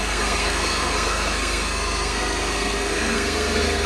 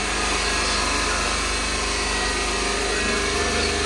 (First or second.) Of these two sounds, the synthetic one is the first